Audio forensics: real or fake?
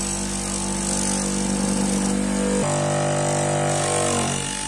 real